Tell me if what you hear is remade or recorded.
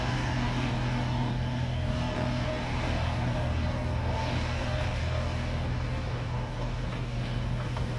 remade